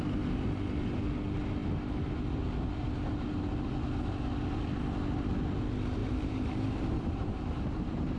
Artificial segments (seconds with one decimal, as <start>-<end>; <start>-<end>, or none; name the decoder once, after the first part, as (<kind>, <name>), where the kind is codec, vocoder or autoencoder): 6.0-8.2 (vocoder, BigVGAN v2)